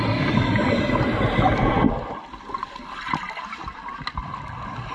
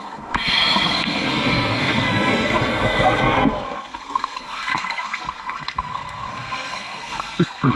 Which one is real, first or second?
first